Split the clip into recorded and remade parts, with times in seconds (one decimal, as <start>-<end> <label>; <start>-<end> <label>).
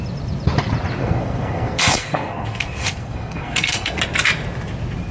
0.0-1.0 recorded; 1.0-4.0 remade; 4.0-5.1 recorded